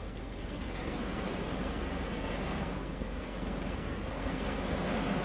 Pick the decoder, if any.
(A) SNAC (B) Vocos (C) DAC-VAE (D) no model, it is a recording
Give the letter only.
A